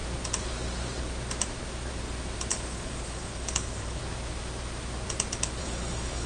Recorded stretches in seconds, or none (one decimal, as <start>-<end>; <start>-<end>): 0.0-2.5; 4.0-5.6